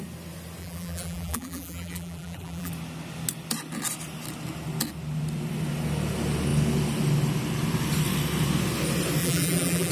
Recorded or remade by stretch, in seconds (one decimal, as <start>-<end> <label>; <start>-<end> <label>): 0.0-0.6 recorded; 0.6-2.7 remade; 2.7-9.2 recorded; 9.2-9.9 remade